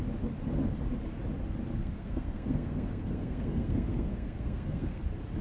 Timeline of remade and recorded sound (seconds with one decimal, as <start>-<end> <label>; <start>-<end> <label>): 0.0-1.8 recorded; 1.8-5.0 remade; 5.0-5.4 recorded